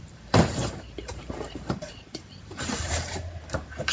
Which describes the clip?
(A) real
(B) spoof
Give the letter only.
B